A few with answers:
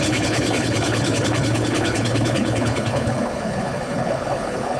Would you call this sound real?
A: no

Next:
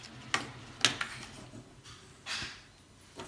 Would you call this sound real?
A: yes